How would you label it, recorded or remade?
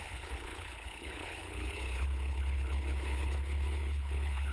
remade